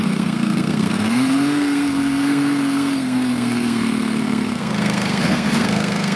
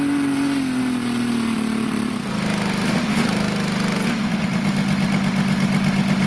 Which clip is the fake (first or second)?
first